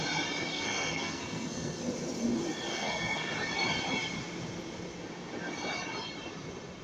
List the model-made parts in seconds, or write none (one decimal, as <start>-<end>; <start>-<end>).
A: 0.5-1.8; 2.7-3.3